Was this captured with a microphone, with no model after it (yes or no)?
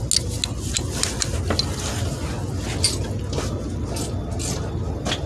yes